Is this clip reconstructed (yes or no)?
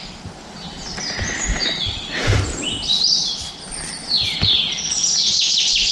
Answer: no